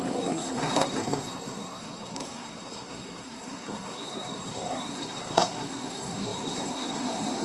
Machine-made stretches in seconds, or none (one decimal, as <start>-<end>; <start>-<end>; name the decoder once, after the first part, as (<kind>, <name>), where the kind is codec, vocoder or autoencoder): 0.0-7.4 (codec, SNAC)